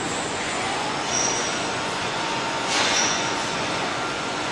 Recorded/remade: remade